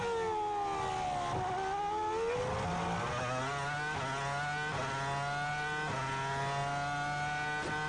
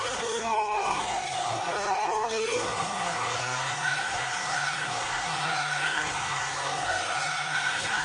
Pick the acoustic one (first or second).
first